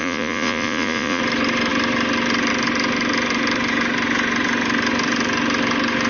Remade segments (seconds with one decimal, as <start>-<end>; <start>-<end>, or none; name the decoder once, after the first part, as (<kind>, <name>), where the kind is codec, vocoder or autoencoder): 0.0-1.2 (vocoder, Vocos)